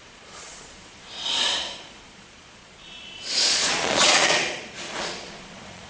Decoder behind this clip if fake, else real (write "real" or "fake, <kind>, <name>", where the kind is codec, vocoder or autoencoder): fake, vocoder, Vocos